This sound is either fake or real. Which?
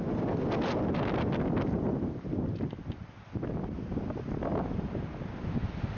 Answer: real